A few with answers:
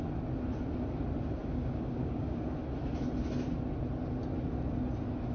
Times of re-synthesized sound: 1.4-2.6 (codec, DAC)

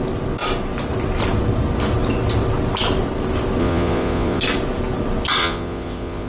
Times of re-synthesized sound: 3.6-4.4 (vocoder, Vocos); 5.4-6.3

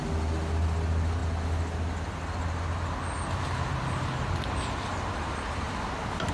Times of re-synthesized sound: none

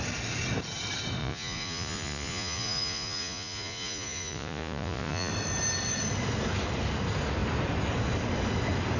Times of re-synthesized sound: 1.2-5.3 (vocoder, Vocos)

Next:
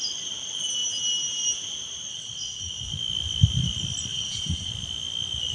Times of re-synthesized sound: 2.1-2.7 (vocoder, WaveNeXt); 4.1-4.7